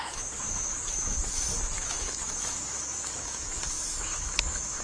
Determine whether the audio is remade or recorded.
remade